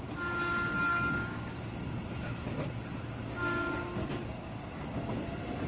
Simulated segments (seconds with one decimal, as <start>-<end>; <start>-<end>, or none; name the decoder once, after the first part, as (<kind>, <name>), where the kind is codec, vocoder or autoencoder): 0.9-1.5 (codec, DAC); 4.0-4.8